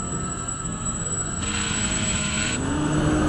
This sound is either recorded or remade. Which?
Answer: remade